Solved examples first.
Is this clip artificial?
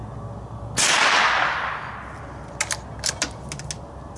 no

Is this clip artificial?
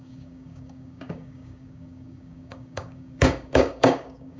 yes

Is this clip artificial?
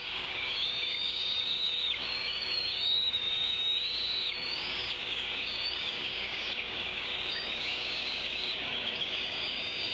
yes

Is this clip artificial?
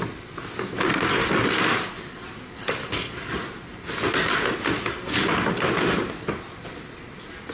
no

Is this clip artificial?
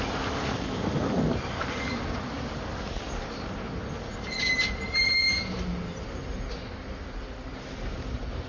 no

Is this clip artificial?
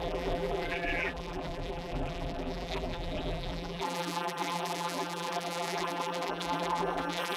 yes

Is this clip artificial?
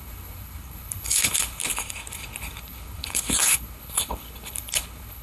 yes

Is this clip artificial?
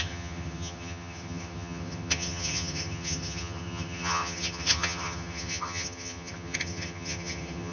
yes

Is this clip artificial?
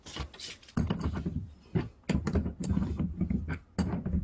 no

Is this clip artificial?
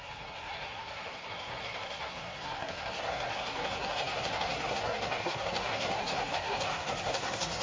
yes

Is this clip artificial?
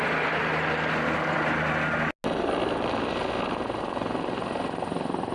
no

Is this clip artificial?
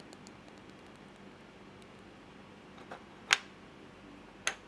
no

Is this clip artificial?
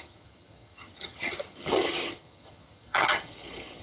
yes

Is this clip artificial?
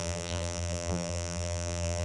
yes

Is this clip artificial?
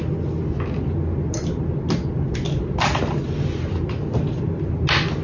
no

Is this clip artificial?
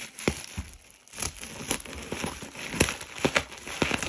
no